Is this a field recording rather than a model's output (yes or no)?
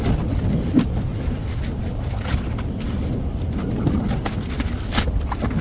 yes